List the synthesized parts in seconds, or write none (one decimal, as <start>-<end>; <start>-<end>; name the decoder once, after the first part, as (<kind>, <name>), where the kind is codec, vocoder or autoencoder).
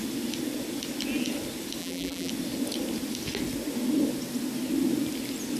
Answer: 1.8-2.3 (vocoder, BigVGAN v2)